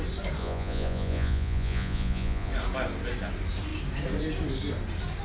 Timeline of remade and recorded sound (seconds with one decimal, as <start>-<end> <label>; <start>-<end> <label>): 0.0-0.4 recorded; 0.4-2.5 remade; 2.5-5.2 recorded